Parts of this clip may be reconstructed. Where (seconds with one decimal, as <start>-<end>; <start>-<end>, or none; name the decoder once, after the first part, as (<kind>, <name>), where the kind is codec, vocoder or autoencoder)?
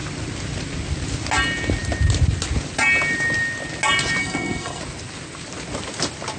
4.2-4.8 (codec, SNAC)